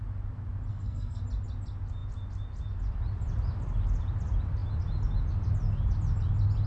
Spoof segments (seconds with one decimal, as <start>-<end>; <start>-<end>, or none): 0.7-1.2

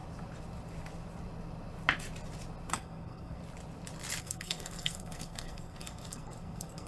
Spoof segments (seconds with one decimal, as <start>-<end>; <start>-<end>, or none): 2.7-3.4; 4.2-6.9

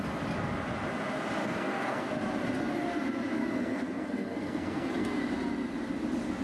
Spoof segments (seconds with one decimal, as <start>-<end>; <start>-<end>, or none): 1.4-2.1; 3.4-5.2

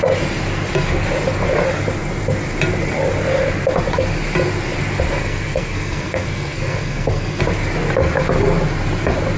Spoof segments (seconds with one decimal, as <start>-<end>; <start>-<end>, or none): 5.2-7.4

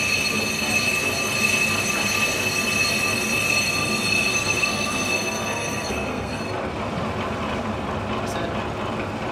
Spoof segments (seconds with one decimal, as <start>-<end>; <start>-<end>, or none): 4.3-6.4

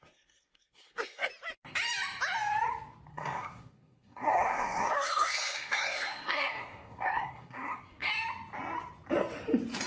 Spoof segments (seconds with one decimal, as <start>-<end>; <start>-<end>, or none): 0.0-1.3; 3.1-8.1

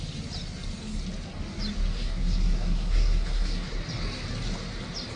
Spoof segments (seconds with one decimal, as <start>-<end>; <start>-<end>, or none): 1.9-3.8

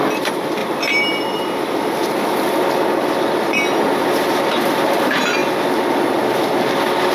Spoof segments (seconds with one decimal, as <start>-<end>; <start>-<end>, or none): none